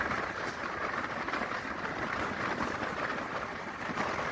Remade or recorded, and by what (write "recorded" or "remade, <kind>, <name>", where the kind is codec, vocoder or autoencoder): remade, vocoder, BigVGAN v2